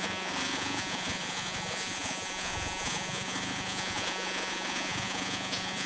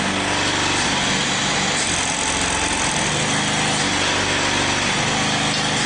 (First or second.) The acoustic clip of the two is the second